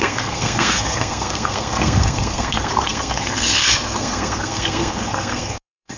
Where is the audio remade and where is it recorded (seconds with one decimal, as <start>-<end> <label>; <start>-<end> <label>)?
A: 0.0-6.0 remade